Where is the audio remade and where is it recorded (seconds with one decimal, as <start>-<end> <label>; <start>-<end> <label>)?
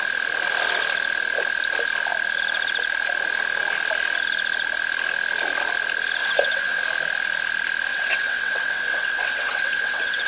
0.0-6.2 recorded; 6.2-6.8 remade; 6.8-7.9 recorded; 7.9-10.3 remade